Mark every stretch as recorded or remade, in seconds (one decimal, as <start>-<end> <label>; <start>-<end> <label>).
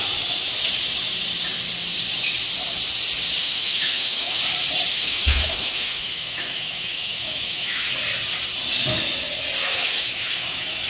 0.0-3.4 recorded; 3.4-4.4 remade; 4.4-4.9 recorded; 4.9-7.9 remade; 7.9-9.6 recorded; 9.6-10.9 remade